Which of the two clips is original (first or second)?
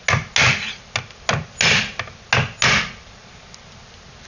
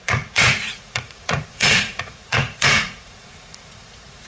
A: first